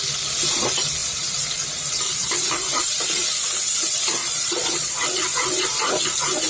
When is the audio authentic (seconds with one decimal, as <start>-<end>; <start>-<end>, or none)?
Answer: 0.0-4.2; 4.9-6.5